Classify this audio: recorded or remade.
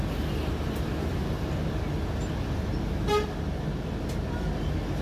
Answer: recorded